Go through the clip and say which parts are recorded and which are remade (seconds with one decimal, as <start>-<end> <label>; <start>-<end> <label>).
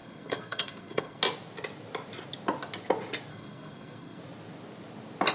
0.0-1.2 remade; 1.2-3.3 recorded; 3.3-4.2 remade; 4.2-5.3 recorded